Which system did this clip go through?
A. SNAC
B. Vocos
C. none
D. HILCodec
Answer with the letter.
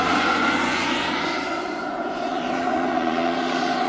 B